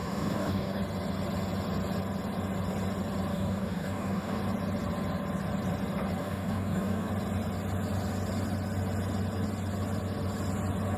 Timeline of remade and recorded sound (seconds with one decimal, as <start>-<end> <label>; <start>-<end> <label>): 0.0-0.8 remade; 0.8-3.3 recorded; 3.3-4.4 remade; 4.4-6.2 recorded; 6.2-7.1 remade; 7.1-11.0 recorded